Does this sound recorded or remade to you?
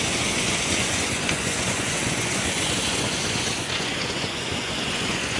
remade